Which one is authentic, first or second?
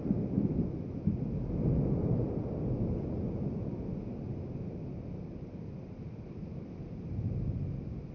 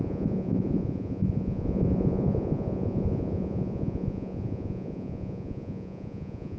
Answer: first